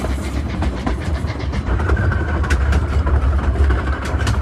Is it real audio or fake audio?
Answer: fake